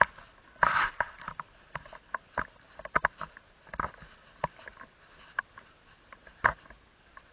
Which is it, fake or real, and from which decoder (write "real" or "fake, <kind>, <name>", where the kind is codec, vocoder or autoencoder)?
real